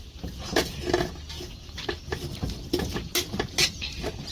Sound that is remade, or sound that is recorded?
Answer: recorded